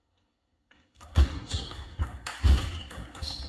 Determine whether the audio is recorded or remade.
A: remade